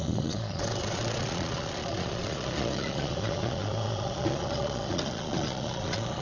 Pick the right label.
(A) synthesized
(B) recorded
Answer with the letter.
A